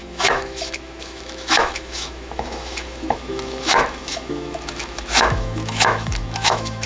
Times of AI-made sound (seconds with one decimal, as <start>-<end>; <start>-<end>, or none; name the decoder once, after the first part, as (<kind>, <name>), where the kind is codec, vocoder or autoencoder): 0.0-6.9 (autoencoder, DAC-VAE)